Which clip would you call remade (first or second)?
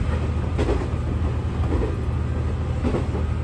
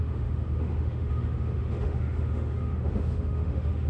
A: second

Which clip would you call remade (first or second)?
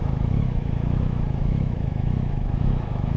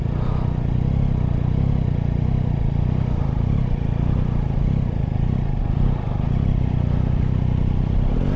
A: first